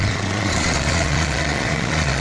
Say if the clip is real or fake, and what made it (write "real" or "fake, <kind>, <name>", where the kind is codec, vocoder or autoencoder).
fake, vocoder, Vocos